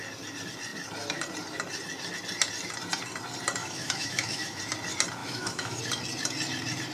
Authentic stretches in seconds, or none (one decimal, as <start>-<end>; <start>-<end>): 0.0-3.6; 4.6-5.2; 5.8-6.9